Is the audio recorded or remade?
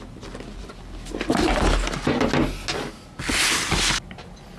recorded